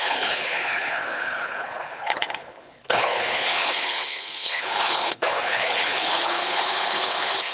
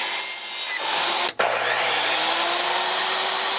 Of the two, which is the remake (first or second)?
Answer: first